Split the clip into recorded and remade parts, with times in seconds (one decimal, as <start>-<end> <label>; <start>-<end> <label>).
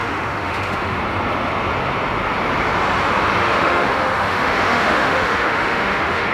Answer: 0.0-1.0 remade; 1.0-3.4 recorded; 3.4-6.3 remade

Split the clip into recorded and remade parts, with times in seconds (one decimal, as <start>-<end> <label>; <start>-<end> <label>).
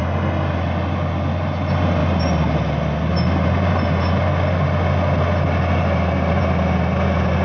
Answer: 0.0-7.4 recorded